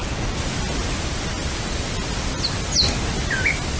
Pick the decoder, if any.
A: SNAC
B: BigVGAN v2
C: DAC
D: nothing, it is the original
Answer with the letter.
D